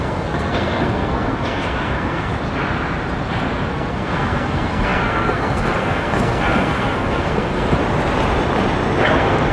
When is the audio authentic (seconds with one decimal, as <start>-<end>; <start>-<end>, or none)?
2.3-3.7; 7.8-9.1